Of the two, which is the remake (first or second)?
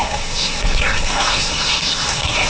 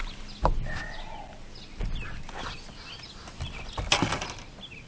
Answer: first